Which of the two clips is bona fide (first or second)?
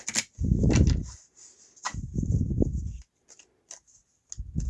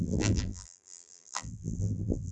first